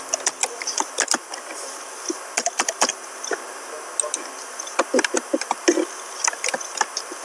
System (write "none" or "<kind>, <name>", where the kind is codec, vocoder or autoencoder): none